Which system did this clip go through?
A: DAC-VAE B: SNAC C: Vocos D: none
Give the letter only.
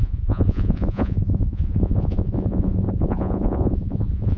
C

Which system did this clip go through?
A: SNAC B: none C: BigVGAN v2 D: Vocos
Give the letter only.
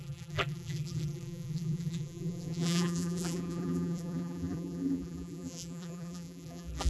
C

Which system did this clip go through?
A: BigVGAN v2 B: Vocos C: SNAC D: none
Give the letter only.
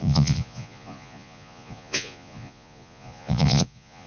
B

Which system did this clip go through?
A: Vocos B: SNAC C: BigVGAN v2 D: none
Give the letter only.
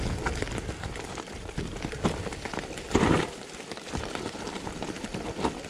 D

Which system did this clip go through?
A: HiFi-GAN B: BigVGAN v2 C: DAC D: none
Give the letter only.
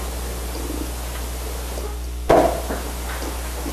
D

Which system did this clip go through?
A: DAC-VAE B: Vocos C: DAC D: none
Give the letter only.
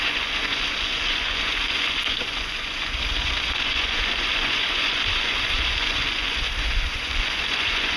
B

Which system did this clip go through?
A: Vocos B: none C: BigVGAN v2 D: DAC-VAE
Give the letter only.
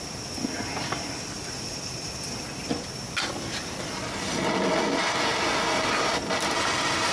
B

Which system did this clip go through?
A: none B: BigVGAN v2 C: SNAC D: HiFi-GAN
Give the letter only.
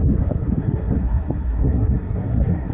C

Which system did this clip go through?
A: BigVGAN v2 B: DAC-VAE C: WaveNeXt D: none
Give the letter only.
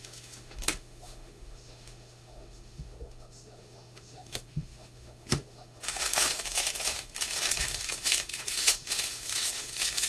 B